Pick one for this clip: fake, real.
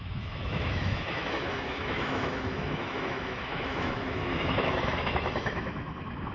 fake